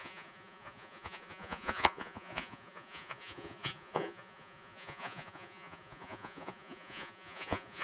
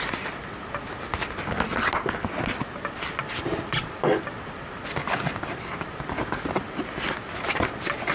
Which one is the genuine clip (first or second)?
second